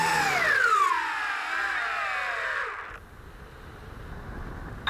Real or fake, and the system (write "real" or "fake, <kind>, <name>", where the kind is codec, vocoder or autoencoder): real